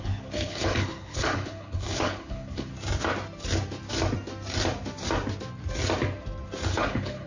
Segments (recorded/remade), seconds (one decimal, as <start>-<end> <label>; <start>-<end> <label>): 0.0-2.7 remade; 2.7-6.7 recorded; 6.7-7.3 remade